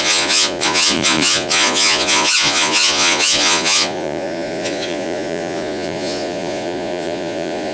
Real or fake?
fake